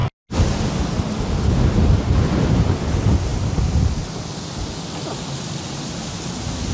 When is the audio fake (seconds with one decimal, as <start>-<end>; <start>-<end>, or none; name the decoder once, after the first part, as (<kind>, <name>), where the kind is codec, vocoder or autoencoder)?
none